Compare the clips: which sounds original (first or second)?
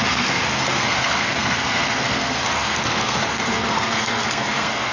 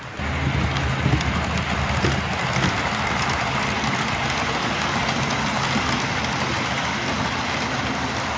second